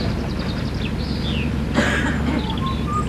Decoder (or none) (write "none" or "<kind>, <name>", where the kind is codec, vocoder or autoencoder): none